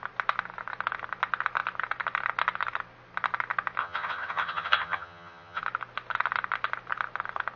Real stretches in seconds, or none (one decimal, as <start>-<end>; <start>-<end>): 0.0-3.8; 5.6-7.6